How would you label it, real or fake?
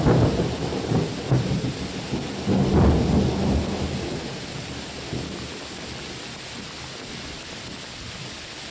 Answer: real